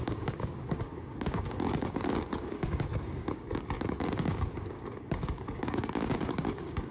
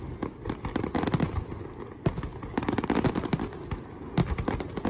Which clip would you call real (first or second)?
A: second